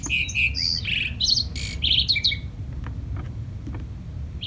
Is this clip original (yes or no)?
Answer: yes